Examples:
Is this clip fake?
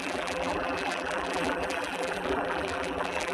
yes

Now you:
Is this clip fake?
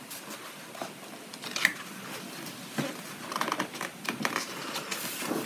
no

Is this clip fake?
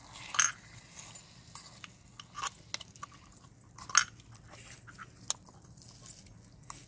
no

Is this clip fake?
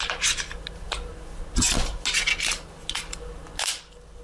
no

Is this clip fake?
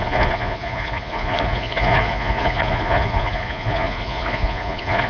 yes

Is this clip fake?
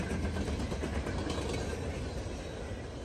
no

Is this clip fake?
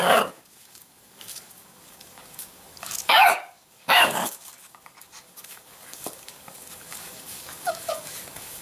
yes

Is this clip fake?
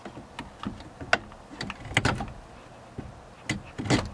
no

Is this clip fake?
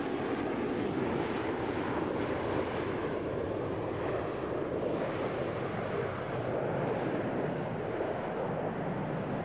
no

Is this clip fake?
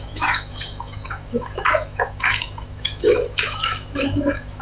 yes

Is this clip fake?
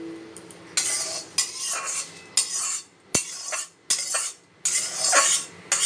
no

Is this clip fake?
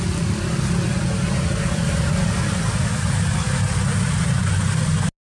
no